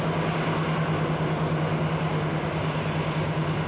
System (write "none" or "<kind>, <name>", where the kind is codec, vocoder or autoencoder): none